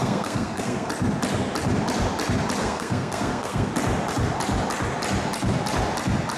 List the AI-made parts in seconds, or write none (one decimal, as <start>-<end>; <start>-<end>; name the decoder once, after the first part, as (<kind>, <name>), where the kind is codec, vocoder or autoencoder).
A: 0.0-0.9 (codec, SNAC); 2.6-3.7